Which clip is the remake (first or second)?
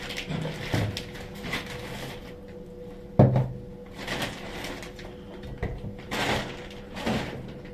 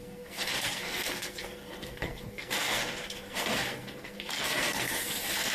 second